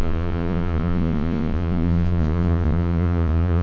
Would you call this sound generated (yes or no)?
yes